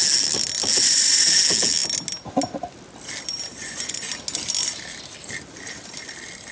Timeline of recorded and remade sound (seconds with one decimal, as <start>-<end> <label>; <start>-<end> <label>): 0.0-3.5 recorded; 3.5-4.1 remade; 4.1-6.5 recorded